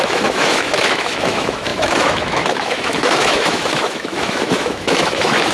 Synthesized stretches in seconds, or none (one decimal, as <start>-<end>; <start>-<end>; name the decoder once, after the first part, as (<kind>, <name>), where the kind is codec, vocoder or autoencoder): 0.0-5.5 (autoencoder, DAC-VAE)